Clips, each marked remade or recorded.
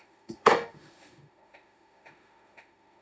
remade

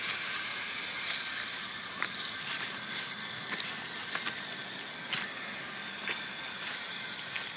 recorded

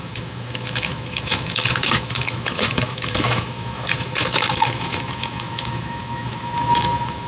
remade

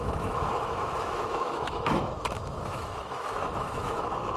remade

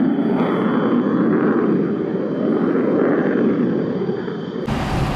recorded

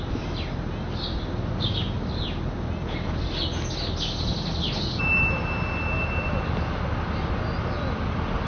recorded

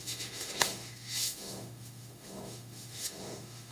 remade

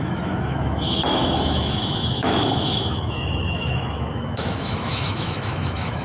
remade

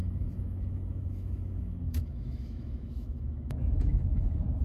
remade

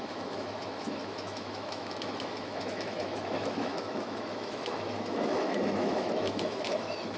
remade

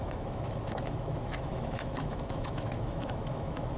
remade